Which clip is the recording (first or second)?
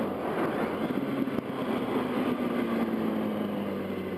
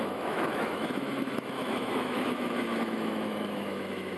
first